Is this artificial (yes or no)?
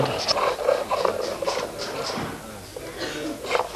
no